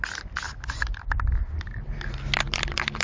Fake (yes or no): no